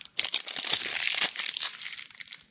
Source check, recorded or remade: recorded